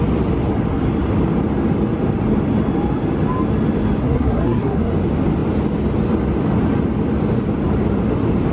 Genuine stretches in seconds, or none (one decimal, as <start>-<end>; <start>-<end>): 0.0-4.0; 4.9-8.5